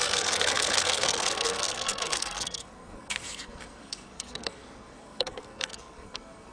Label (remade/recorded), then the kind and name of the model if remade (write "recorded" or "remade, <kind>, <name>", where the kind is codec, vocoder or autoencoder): remade, codec, SNAC